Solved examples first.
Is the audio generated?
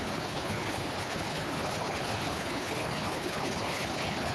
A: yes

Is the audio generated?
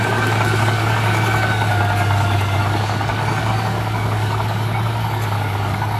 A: yes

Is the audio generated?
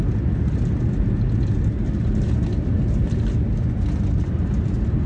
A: no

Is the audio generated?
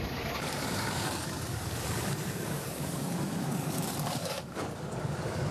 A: yes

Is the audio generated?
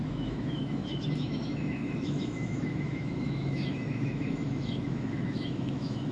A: yes